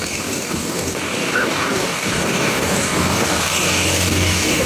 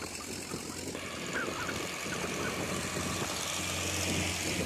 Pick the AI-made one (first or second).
first